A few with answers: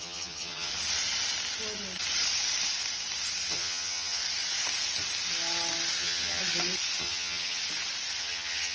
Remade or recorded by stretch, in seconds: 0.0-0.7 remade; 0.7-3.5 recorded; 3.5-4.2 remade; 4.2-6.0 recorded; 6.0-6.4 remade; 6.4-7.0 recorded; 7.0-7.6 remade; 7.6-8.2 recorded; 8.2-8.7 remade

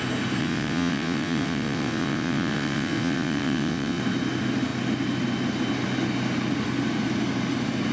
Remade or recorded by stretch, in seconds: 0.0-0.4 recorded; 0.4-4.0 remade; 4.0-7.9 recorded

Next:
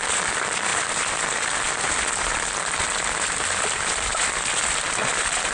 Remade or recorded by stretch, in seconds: 0.0-5.5 recorded

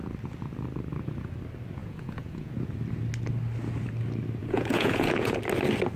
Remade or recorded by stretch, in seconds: 0.0-1.8 recorded; 1.8-2.5 remade; 2.5-4.4 recorded; 4.4-5.4 remade; 5.4-6.0 recorded

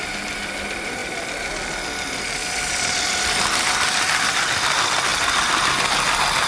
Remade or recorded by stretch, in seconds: 0.0-6.5 recorded

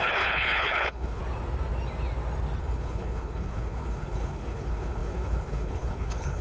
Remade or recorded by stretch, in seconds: 0.0-1.2 remade; 1.2-2.6 recorded; 2.6-6.4 remade